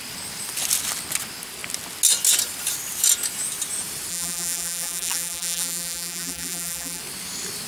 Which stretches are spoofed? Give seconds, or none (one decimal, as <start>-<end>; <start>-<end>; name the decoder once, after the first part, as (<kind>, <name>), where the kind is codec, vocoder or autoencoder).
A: 4.1-7.0 (vocoder, BigVGAN v2)